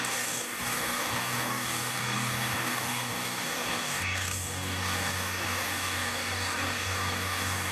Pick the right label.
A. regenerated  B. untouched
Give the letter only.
A